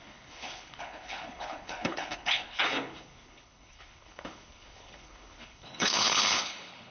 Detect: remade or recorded remade